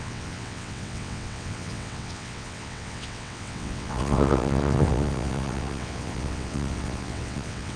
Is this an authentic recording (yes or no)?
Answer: no